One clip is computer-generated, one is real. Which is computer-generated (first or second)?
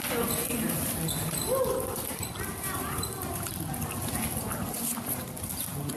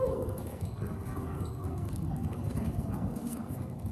second